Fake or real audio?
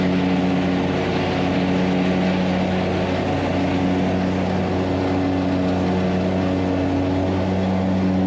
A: real